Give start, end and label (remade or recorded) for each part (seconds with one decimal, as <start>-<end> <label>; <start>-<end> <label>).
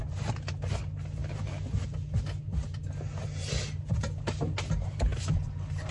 0.0-5.9 recorded